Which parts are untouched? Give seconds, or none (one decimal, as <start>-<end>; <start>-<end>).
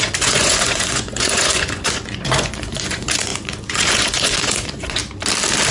5.0-5.7